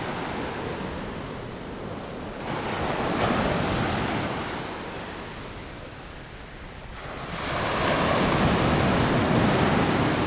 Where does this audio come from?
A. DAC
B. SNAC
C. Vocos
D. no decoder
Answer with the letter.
D